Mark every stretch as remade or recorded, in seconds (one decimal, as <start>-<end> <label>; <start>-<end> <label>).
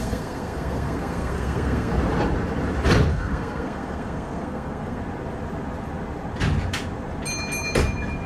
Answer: 0.0-1.9 remade; 1.9-3.1 recorded; 3.1-5.0 remade; 5.0-8.3 recorded